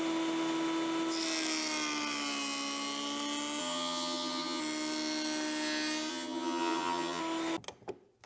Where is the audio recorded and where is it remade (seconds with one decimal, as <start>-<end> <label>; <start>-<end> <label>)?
0.0-3.6 recorded; 3.6-4.6 remade; 4.6-6.1 recorded; 6.1-7.2 remade; 7.2-8.3 recorded